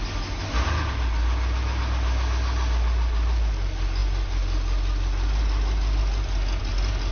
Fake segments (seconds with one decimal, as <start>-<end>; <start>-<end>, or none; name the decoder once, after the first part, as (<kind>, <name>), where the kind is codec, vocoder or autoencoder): none